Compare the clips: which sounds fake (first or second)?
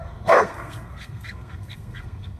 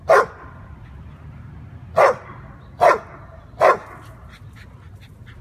first